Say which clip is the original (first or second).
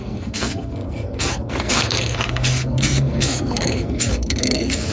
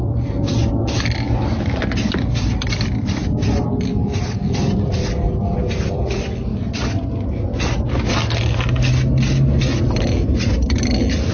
second